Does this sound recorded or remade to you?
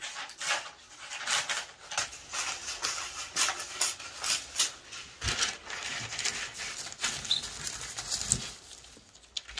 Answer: recorded